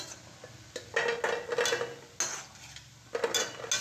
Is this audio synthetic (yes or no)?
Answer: no